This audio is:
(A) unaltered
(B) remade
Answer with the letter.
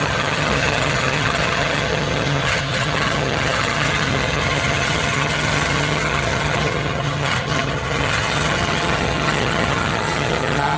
B